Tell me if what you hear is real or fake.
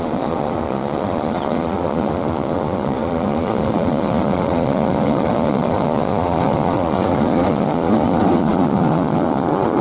fake